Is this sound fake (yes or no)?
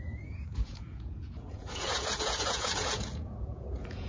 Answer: yes